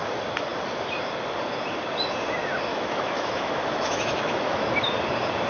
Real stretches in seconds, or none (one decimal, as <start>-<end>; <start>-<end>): 0.0-2.7; 4.6-5.5